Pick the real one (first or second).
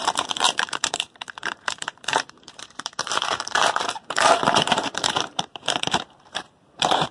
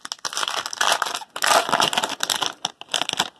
second